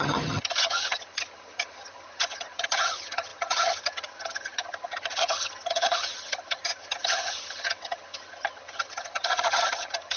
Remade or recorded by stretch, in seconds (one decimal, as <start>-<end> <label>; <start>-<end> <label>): 0.0-10.2 remade

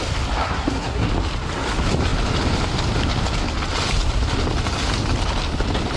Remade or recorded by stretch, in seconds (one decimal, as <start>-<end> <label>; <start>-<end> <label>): 0.0-0.4 recorded; 0.4-1.1 remade; 1.1-6.0 recorded

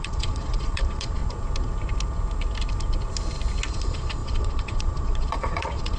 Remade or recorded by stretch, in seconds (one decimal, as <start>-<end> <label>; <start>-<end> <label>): 0.0-1.2 remade; 1.2-3.7 recorded; 3.7-6.0 remade

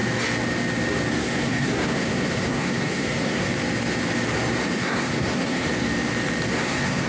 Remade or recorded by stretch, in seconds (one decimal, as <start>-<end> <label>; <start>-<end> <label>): 0.0-1.1 recorded; 1.1-3.5 remade; 3.5-4.6 recorded; 4.6-5.7 remade; 5.7-6.5 recorded; 6.5-7.1 remade

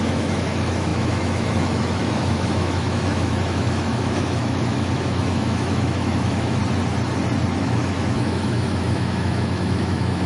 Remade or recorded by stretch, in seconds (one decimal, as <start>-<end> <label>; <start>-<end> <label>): 0.0-6.6 remade; 6.6-7.6 recorded; 7.6-10.3 remade